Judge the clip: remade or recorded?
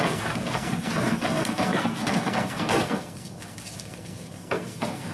remade